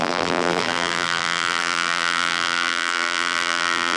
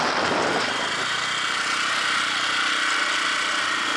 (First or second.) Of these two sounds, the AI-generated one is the first